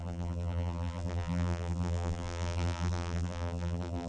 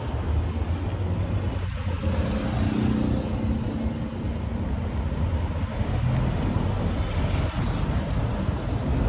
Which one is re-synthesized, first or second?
first